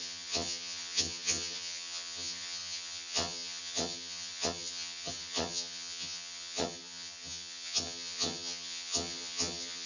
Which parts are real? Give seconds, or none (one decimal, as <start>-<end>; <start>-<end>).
none